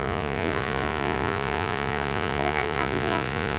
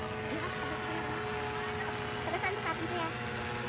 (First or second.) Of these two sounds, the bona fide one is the second